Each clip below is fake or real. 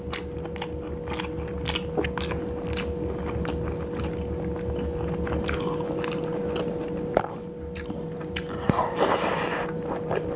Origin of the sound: real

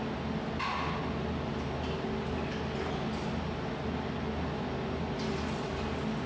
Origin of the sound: real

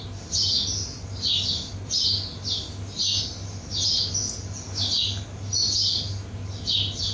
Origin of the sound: real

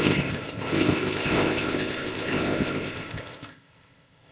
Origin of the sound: fake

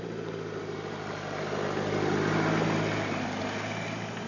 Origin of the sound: real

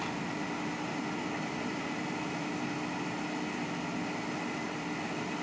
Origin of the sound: real